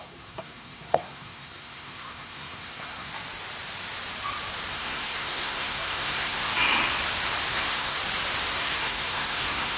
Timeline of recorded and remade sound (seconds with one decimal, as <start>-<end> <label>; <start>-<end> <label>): 0.0-3.1 remade; 3.1-4.7 recorded; 4.7-6.5 remade; 6.5-7.5 recorded; 7.5-8.0 remade; 8.0-8.5 recorded; 8.5-9.8 remade